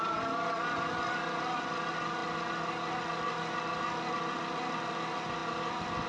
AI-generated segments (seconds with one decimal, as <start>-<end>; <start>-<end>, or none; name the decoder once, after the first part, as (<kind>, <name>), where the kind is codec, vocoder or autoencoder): none